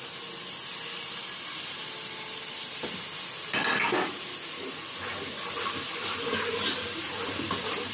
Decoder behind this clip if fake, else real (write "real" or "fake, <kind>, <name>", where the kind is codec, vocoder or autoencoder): real